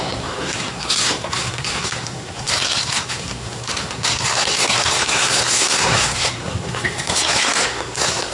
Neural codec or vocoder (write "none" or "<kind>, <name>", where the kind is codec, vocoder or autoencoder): codec, SNAC